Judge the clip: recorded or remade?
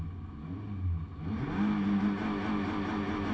recorded